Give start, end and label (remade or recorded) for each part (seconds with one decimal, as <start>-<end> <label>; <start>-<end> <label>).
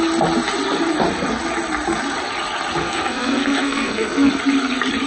0.0-2.8 recorded; 2.8-4.3 remade; 4.3-5.1 recorded